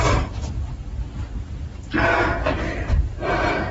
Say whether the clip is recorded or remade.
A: recorded